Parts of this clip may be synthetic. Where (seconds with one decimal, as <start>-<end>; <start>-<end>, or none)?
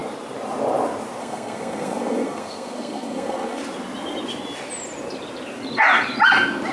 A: 1.2-3.6